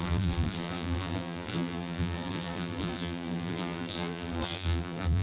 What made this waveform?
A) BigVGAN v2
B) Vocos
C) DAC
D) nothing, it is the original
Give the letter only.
A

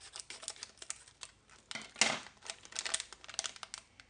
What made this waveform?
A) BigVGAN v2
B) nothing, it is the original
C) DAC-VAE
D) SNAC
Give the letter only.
B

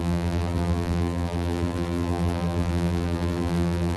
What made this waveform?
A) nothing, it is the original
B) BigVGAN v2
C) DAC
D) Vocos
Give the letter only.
B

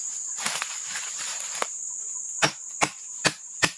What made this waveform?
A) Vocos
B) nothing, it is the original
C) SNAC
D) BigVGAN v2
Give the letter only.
D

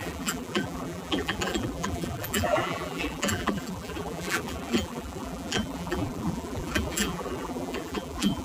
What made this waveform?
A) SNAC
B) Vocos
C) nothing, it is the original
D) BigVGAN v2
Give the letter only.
D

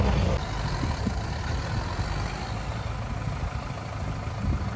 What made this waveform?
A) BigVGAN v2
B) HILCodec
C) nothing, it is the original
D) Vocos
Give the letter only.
C